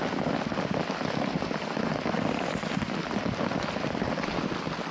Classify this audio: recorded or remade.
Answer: recorded